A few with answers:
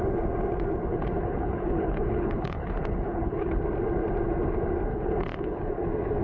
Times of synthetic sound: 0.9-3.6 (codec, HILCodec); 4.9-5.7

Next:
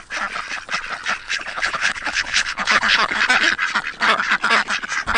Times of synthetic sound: 1.2-3.2 (codec, HILCodec)